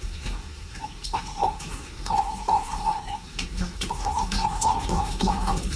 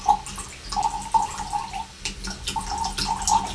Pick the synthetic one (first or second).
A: first